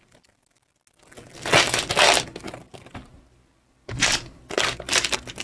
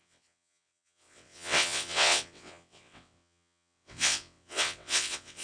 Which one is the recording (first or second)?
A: first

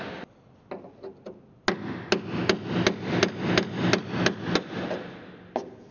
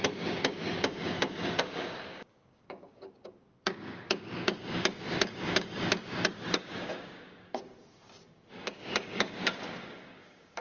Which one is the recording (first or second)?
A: first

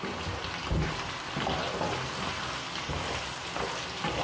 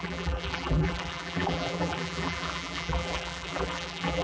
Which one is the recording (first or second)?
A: first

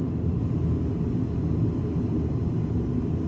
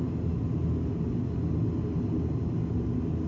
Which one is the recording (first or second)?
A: second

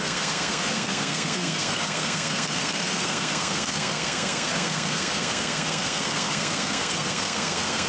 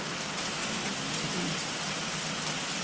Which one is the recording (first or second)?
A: second